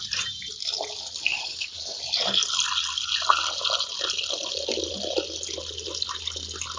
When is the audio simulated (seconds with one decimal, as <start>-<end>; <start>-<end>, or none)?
1.3-2.0

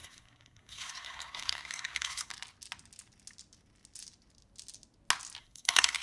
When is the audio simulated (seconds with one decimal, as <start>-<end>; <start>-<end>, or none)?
0.0-2.3; 5.4-6.0

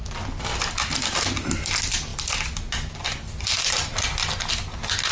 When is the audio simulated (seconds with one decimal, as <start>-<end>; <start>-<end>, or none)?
none

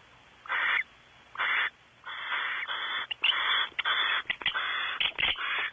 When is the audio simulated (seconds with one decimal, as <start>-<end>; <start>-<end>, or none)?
none